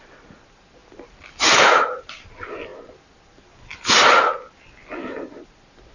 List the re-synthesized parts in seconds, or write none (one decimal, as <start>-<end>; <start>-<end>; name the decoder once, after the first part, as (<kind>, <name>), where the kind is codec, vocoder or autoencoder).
0.8-2.3 (vocoder, BigVGAN v2)